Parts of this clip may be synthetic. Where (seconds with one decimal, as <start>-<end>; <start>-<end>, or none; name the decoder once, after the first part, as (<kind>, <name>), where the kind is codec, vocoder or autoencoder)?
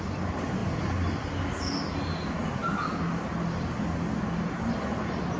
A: none